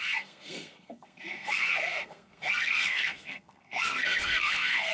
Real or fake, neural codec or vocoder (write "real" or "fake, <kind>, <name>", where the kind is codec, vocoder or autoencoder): fake, codec, SNAC